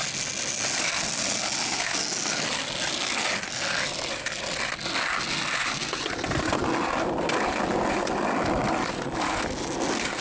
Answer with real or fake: real